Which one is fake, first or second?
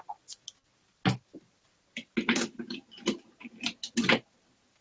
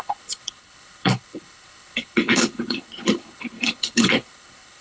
second